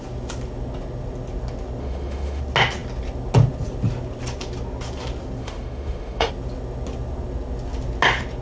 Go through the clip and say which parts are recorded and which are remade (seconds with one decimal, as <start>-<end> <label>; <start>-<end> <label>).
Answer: 0.0-1.8 recorded; 1.8-2.4 remade; 2.4-5.4 recorded; 5.4-6.3 remade; 6.3-8.4 recorded

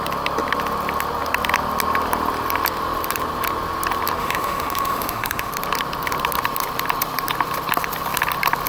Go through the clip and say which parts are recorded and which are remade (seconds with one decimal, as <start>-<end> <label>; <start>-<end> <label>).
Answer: 0.0-4.2 recorded; 4.2-5.5 remade; 5.5-8.7 recorded

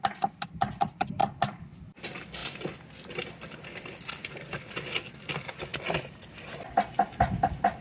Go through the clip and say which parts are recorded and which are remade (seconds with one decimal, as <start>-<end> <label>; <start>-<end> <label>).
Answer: 0.0-7.8 recorded

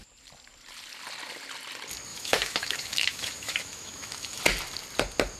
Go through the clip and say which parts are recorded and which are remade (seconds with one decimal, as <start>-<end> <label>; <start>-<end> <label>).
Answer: 0.0-2.1 recorded; 2.1-4.4 remade; 4.4-5.4 recorded

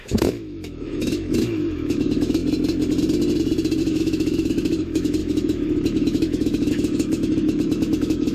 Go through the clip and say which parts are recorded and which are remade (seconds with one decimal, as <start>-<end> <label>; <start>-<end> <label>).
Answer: 0.0-2.4 remade; 2.4-3.8 recorded; 3.8-8.3 remade

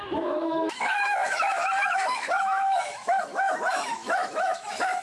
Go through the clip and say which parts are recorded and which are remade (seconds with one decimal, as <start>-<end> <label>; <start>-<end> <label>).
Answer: 0.0-5.0 remade

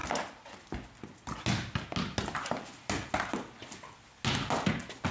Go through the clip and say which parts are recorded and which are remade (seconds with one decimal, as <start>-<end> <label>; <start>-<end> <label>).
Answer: 0.0-5.1 recorded